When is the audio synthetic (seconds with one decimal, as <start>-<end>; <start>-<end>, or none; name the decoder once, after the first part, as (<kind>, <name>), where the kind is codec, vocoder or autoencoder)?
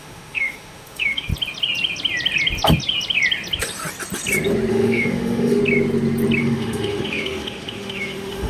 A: 0.0-1.3 (autoencoder, DAC-VAE); 4.7-5.6; 6.4-8.5